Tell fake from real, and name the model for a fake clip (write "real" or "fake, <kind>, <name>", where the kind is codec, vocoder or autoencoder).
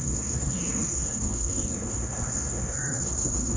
fake, codec, SNAC